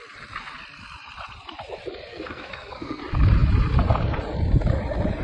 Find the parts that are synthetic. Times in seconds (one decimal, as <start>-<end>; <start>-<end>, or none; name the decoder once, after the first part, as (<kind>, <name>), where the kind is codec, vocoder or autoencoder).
2.1-3.0 (codec, SNAC)